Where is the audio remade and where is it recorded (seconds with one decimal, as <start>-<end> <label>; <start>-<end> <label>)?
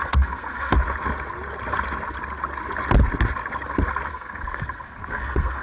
0.0-0.7 remade; 0.7-4.1 recorded; 4.1-5.6 remade